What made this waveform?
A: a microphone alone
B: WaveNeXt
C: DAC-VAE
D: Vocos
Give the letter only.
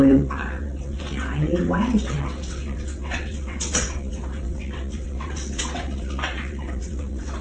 B